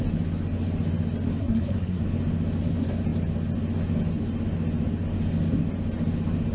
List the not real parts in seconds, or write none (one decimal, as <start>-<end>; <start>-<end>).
1.4-2.0